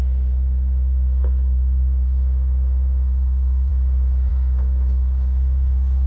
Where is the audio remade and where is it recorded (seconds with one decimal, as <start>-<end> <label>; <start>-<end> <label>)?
0.0-3.7 remade; 3.7-4.3 recorded; 4.3-6.1 remade